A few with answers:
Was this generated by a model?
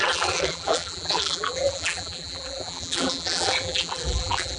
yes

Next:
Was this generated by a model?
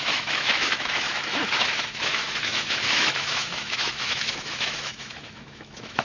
yes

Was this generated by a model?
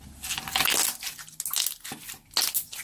no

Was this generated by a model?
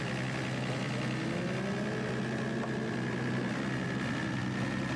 no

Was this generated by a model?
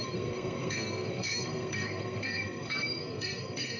yes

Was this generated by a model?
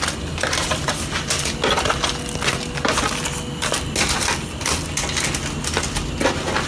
no